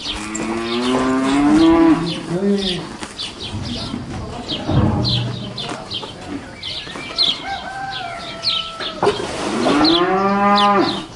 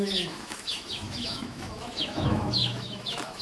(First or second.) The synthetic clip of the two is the second